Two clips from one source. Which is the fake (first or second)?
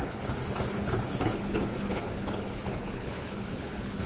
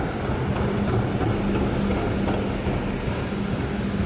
first